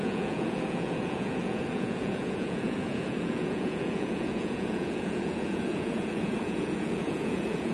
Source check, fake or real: fake